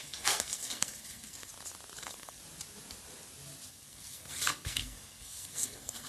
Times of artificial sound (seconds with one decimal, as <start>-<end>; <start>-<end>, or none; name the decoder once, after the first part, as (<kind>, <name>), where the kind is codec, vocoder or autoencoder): 0.0-1.5 (codec, SNAC); 2.0-2.4; 3.7-6.1